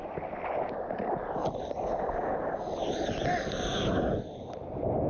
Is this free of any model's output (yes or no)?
yes